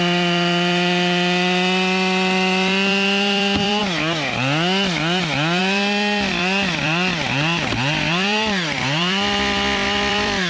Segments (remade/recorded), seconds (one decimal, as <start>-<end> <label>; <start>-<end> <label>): 0.0-3.8 remade; 3.8-5.6 recorded; 5.6-10.5 remade